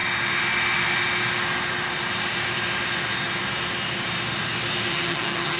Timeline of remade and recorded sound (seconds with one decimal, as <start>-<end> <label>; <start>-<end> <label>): 0.0-4.9 recorded; 4.9-5.6 remade